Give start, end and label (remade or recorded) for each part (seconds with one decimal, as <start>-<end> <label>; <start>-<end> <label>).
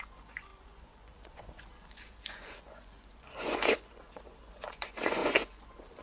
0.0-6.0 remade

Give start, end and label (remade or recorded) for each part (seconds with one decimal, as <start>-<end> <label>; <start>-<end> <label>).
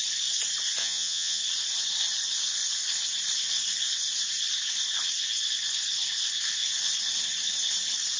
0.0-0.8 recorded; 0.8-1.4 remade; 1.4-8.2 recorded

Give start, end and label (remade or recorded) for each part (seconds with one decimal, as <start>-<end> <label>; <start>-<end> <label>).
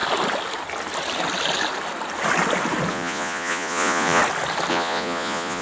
0.0-2.9 recorded; 2.9-4.2 remade; 4.2-4.7 recorded; 4.7-5.6 remade